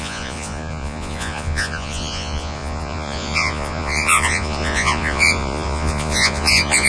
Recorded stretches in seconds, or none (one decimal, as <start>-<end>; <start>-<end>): none